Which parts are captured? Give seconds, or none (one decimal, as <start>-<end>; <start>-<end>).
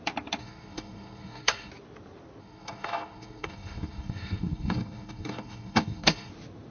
0.0-0.4; 1.7-2.4; 6.3-6.7